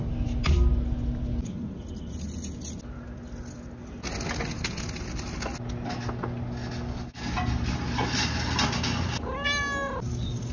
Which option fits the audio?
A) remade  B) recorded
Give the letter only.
B